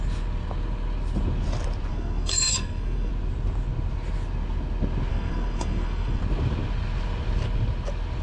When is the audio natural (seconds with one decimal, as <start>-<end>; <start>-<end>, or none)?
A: 0.0-1.9; 3.1-5.1; 6.2-8.2